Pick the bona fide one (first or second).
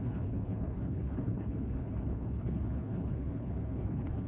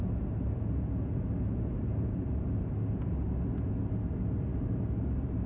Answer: second